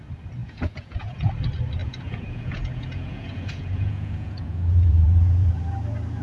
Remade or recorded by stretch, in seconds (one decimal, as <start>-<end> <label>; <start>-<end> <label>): 0.0-0.4 recorded; 0.4-1.3 remade; 1.3-1.8 recorded; 1.8-5.5 remade; 5.5-6.2 recorded

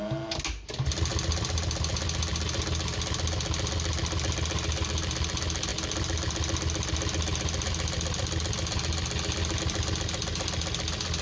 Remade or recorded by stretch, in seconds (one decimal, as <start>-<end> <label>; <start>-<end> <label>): 0.0-11.2 recorded

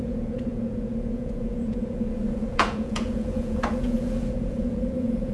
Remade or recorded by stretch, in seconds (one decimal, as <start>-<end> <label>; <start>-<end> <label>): 0.0-5.3 remade

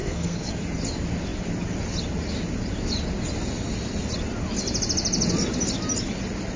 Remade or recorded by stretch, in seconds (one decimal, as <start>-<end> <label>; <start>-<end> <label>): 0.0-0.5 remade; 0.5-6.6 recorded

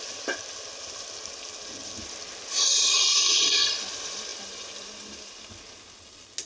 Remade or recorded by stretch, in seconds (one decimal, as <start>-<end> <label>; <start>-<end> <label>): 0.0-6.5 recorded